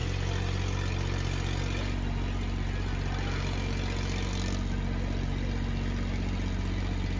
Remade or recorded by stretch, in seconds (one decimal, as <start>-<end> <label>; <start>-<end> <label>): 0.0-7.2 recorded